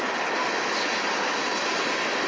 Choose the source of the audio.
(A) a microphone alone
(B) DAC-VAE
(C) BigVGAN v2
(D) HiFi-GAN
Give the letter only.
A